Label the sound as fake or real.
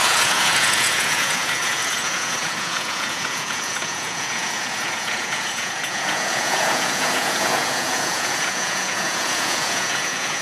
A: fake